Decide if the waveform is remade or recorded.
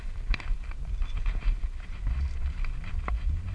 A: recorded